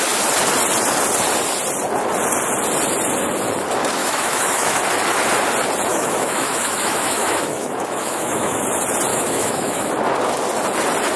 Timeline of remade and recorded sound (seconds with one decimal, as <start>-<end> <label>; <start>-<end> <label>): 0.0-4.0 recorded; 4.0-4.8 remade; 4.8-5.9 recorded; 5.9-8.6 remade; 8.6-9.1 recorded; 9.1-9.9 remade; 9.9-11.2 recorded

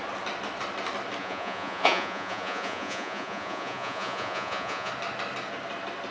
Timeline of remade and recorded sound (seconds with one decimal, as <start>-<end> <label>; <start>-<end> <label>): 0.0-1.2 recorded; 1.2-4.9 remade; 4.9-6.1 recorded

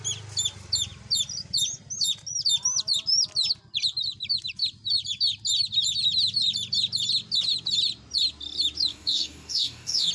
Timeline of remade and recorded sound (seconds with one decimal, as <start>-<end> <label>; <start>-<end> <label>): 0.0-8.9 recorded; 8.9-10.1 remade

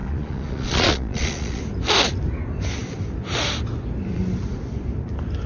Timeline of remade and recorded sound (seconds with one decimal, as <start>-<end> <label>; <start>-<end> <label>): 0.0-1.6 remade; 1.6-5.5 recorded